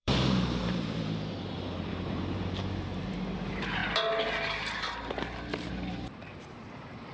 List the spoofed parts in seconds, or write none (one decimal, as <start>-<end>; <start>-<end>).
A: 0.0-3.8; 5.7-7.1